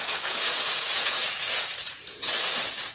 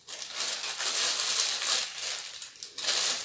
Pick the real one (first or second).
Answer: second